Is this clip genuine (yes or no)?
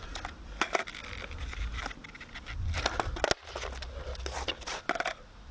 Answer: yes